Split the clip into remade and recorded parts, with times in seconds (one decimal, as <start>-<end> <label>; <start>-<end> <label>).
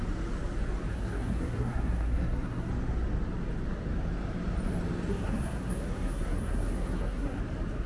0.0-0.9 recorded; 0.9-2.7 remade; 2.7-5.1 recorded; 5.1-7.4 remade; 7.4-7.9 recorded